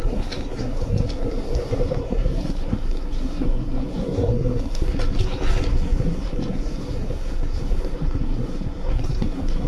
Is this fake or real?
fake